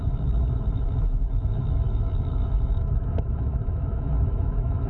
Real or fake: fake